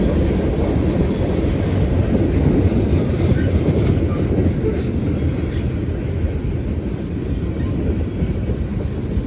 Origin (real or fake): real